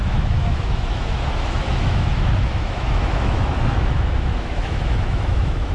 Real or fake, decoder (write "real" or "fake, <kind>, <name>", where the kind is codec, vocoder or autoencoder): fake, autoencoder, DAC-VAE